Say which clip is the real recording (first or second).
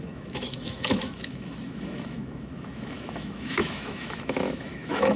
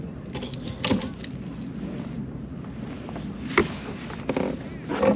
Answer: second